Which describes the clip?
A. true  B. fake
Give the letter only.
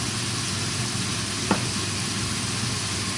A